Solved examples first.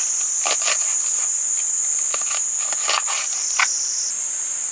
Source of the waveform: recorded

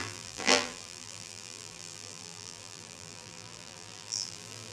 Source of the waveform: remade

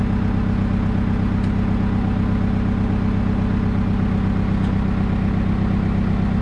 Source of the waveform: recorded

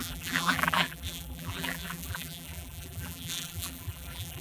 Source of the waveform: remade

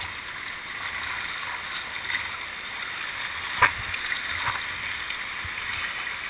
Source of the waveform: recorded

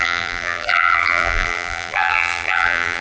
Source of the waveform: remade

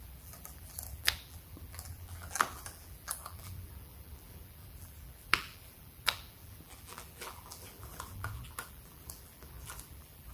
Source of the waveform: remade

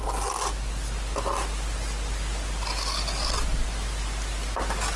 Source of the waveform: recorded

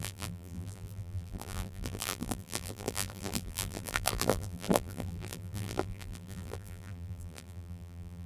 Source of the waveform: remade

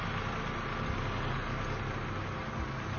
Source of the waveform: recorded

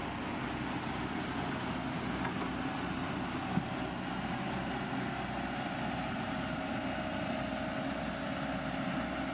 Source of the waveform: recorded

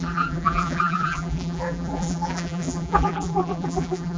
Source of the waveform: remade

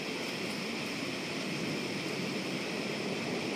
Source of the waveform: remade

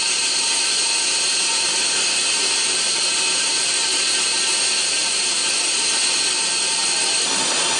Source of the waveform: recorded